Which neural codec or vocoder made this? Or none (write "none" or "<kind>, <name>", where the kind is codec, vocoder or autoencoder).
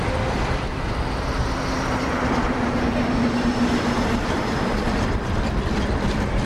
none